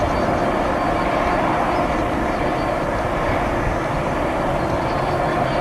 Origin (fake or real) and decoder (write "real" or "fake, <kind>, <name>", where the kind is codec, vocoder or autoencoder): real